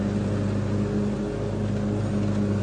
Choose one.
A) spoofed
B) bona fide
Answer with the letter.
B